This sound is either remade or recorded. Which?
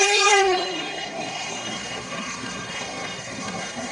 remade